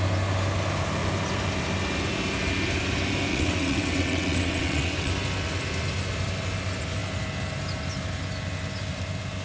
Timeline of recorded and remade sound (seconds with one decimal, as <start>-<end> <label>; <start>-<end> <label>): 0.0-3.3 recorded; 3.3-5.1 remade; 5.1-9.4 recorded